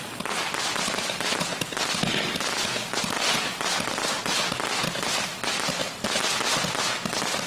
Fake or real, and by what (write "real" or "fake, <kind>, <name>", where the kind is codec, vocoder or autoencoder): real